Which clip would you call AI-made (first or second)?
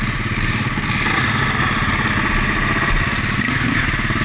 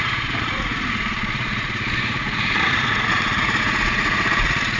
second